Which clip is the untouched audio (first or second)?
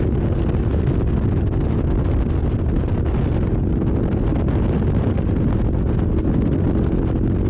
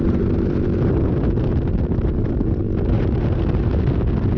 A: first